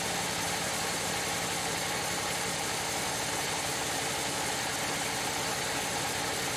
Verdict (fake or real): fake